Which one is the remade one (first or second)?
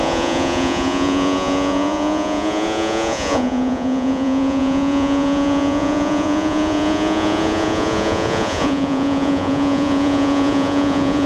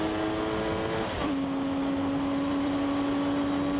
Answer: first